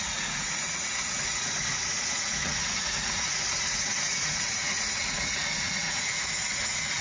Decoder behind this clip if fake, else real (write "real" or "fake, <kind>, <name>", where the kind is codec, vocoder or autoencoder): fake, vocoder, Vocos